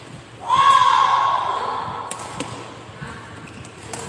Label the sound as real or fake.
real